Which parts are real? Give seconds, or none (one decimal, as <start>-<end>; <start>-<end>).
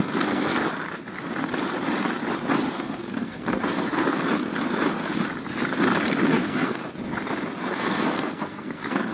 0.5-2.7; 4.5-6.3; 6.8-7.7